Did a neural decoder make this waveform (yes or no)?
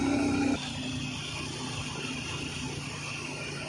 no